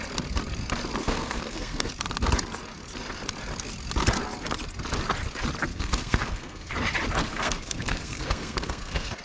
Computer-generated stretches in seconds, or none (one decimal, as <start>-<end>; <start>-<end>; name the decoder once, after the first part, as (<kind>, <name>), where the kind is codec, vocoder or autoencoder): 1.0-1.9 (codec, SNAC); 5.7-6.7; 7.2-9.2